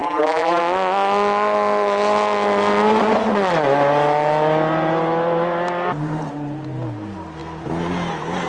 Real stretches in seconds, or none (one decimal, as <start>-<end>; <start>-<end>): 0.6-8.5